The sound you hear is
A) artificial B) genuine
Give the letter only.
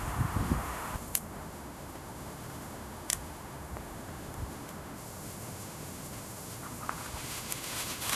A